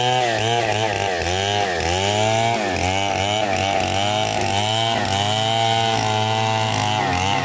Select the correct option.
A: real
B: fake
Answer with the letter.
A